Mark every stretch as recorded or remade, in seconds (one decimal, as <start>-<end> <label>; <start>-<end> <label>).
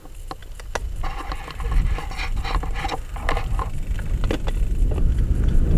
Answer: 0.0-5.8 recorded